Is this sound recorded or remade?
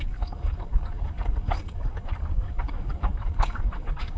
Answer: remade